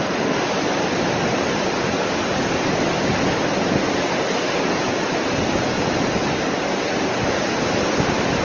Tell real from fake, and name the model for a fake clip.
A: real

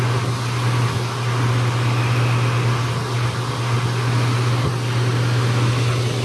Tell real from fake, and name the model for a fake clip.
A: real